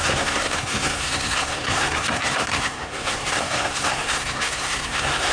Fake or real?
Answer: fake